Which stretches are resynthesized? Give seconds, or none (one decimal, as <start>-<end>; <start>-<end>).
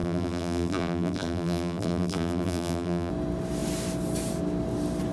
0.0-3.1